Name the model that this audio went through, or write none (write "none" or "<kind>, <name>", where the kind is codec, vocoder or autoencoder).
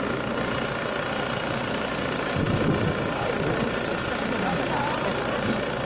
none